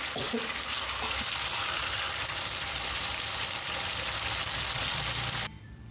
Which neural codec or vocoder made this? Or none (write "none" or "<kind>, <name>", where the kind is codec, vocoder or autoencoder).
vocoder, BigVGAN v2